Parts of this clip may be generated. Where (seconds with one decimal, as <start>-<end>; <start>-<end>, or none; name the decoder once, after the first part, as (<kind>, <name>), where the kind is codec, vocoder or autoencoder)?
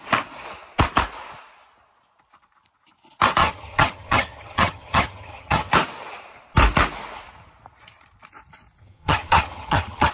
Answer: 3.4-5.7 (vocoder, HiFi-GAN); 8.8-10.1